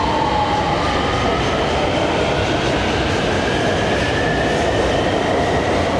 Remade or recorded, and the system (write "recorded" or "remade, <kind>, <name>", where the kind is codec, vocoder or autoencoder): recorded